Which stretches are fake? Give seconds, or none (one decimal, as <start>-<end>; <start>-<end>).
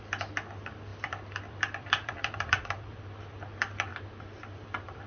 0.9-3.0; 3.9-5.1